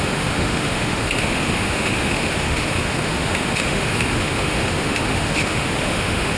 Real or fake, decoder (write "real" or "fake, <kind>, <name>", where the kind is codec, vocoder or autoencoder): fake, autoencoder, DAC-VAE